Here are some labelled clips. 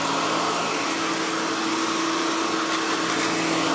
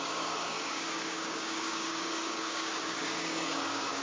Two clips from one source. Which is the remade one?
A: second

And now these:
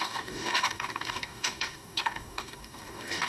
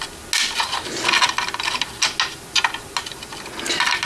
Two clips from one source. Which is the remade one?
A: first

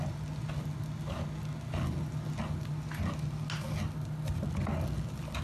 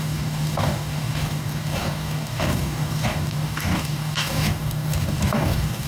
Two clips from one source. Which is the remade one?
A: second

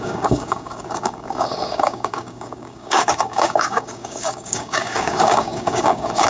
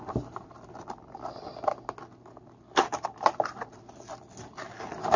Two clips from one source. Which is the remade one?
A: first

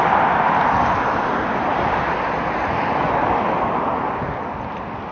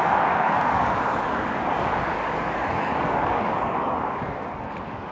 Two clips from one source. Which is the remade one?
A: second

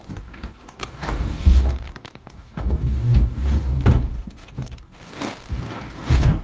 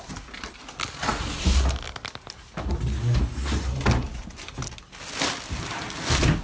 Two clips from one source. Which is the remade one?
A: first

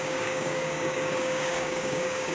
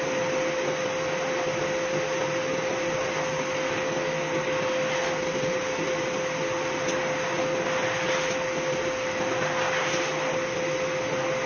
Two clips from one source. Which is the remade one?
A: first